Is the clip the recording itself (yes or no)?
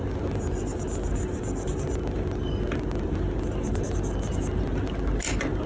yes